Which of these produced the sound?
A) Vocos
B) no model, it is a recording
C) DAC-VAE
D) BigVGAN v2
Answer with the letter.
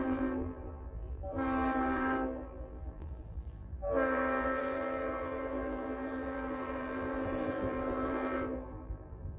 D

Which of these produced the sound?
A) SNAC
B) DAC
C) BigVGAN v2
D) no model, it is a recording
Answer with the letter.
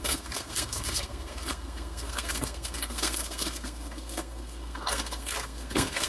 A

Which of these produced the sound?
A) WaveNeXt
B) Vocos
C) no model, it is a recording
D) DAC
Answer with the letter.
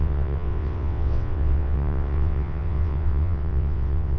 A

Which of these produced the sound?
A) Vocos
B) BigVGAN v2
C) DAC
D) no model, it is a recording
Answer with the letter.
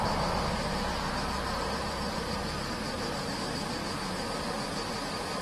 B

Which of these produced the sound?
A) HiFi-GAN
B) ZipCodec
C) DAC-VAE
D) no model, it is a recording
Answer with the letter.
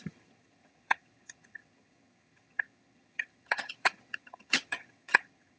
A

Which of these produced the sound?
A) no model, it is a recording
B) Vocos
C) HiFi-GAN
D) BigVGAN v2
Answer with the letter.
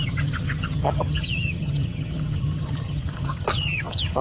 C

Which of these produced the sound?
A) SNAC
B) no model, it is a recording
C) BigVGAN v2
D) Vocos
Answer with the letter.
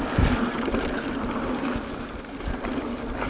B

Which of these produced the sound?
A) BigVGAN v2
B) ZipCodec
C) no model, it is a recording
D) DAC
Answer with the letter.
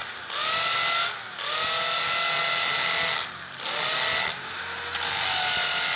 C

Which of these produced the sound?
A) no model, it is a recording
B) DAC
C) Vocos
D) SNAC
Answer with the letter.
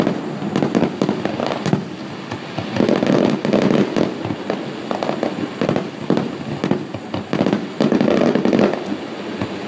A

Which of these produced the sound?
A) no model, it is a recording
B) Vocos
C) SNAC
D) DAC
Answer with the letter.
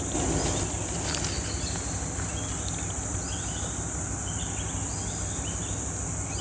A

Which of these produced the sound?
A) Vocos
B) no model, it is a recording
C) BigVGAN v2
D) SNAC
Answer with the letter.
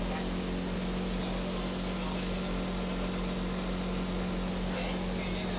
B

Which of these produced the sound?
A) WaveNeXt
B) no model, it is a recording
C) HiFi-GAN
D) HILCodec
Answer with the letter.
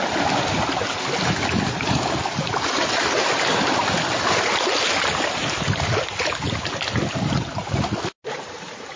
B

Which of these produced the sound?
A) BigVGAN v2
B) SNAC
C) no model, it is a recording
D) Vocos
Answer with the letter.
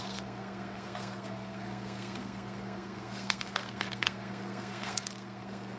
B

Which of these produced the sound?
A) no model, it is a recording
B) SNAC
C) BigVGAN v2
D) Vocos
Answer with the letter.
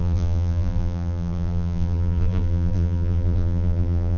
C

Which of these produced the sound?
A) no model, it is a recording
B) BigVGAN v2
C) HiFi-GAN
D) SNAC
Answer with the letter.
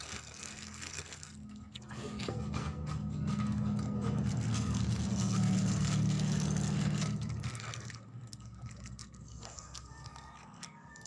D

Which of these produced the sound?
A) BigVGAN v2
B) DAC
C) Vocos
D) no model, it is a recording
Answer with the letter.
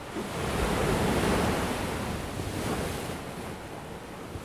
D